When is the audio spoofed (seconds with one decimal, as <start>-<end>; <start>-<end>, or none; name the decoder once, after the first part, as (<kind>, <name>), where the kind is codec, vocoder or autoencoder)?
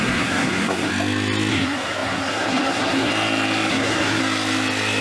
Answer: 0.0-0.9 (codec, SNAC); 1.5-3.1; 3.7-4.2